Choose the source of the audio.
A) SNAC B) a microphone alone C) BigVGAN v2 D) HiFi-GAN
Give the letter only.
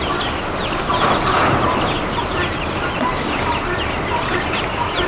C